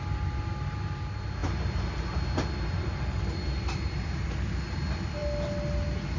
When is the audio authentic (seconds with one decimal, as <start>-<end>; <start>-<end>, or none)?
0.0-6.2